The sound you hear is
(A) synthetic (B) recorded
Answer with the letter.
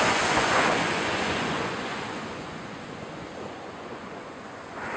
A